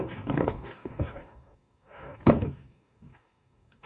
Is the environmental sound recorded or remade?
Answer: remade